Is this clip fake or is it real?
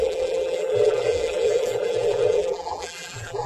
fake